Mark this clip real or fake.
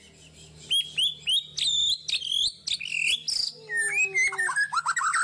real